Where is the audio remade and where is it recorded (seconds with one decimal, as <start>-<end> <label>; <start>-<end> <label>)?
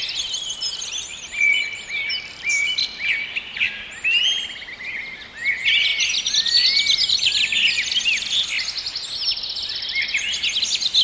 0.0-1.1 recorded; 1.1-4.2 remade; 4.2-11.0 recorded